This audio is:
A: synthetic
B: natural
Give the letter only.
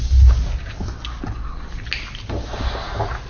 B